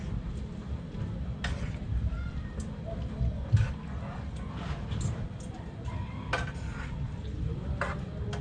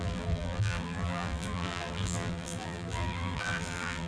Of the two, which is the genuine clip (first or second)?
first